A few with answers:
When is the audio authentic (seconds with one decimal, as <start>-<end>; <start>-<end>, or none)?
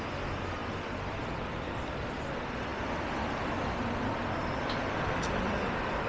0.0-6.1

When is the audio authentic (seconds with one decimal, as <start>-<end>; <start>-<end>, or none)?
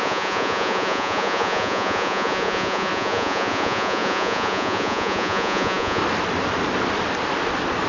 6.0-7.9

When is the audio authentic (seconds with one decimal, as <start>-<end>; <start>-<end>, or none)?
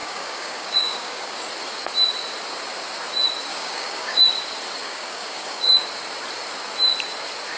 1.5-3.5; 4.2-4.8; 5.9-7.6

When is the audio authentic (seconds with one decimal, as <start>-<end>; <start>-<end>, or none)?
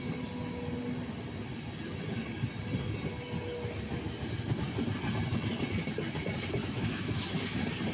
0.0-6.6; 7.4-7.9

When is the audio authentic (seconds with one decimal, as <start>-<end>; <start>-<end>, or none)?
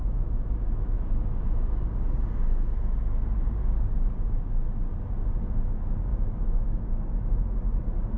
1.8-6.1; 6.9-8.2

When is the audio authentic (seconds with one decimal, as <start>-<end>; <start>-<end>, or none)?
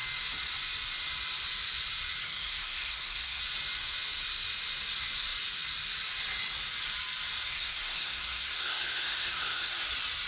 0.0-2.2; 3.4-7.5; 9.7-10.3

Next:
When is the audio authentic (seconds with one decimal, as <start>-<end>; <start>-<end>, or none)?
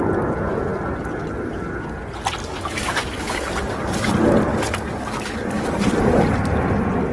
0.0-2.4; 4.1-4.5; 5.9-7.1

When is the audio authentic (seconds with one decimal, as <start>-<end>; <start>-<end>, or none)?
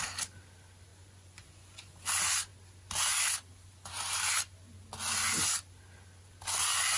0.0-0.9; 2.0-7.0